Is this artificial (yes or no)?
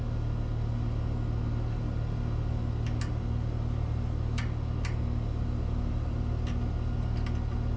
no